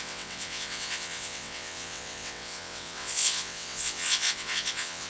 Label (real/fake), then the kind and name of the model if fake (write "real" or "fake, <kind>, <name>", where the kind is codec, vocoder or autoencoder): fake, vocoder, WaveNeXt